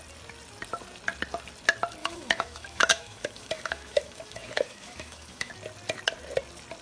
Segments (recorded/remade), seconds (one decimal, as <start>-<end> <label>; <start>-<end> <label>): 0.0-2.0 recorded; 2.0-5.5 remade; 5.5-6.8 recorded